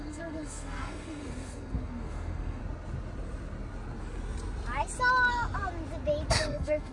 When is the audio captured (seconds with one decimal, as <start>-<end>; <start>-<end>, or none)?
2.6-6.3